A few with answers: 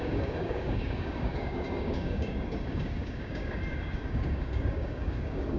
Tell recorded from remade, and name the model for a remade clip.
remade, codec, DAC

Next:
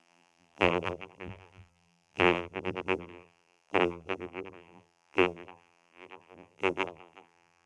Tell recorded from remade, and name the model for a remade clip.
remade, vocoder, BigVGAN v2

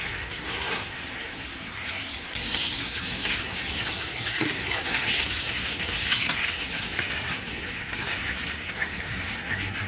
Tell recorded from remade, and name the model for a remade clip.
remade, codec, SNAC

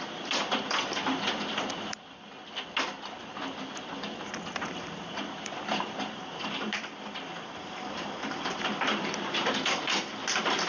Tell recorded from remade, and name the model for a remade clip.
remade, vocoder, BigVGAN v2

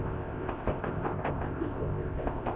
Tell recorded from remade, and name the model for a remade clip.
remade, codec, ZipCodec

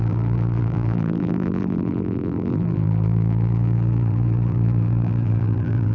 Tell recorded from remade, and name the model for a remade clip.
remade, vocoder, BigVGAN v2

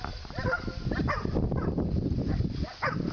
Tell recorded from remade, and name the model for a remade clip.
recorded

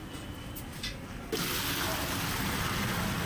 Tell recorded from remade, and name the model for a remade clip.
recorded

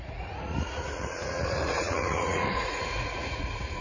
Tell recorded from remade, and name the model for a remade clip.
remade, vocoder, Vocos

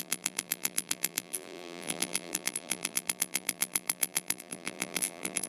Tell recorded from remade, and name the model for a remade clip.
remade, vocoder, BigVGAN v2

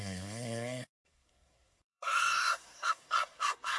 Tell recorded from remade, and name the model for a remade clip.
remade, codec, SNAC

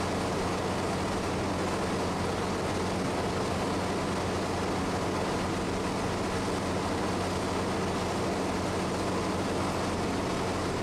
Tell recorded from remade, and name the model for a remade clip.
recorded